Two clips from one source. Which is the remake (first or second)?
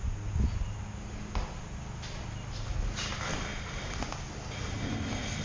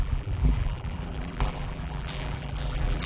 second